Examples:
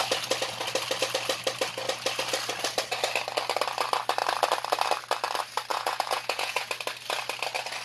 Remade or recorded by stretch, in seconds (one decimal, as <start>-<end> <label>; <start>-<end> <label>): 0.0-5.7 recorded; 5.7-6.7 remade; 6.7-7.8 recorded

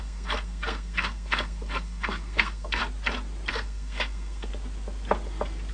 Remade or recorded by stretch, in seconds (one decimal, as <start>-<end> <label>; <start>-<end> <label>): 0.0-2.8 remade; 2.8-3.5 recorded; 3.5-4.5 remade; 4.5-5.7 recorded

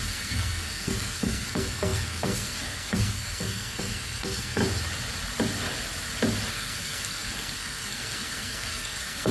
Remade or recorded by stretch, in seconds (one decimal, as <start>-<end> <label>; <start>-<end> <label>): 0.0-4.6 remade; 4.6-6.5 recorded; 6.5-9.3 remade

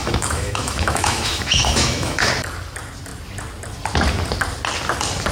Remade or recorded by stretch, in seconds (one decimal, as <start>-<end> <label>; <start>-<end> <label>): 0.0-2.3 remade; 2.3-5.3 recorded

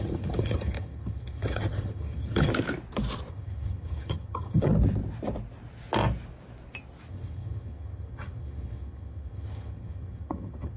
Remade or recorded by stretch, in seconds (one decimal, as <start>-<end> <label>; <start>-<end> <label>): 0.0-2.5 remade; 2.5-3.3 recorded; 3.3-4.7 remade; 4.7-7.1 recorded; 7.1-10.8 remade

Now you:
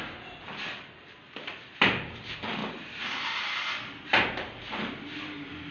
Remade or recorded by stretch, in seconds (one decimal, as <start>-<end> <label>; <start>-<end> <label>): 0.0-5.7 recorded

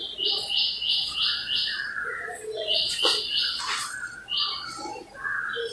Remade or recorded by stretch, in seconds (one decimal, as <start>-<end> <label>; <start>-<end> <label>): 0.0-0.9 recorded; 0.9-3.6 remade; 3.6-5.7 recorded

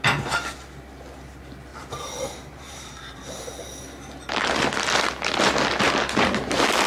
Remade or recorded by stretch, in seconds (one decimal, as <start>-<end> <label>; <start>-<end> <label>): 0.0-1.7 recorded; 1.7-3.8 remade; 3.8-6.9 recorded